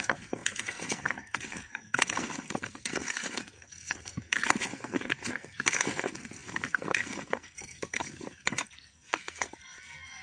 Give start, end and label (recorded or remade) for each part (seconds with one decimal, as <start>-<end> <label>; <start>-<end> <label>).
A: 0.0-10.2 remade